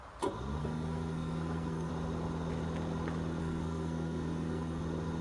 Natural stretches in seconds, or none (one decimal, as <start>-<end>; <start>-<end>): 0.0-0.6; 1.9-3.4; 4.8-5.2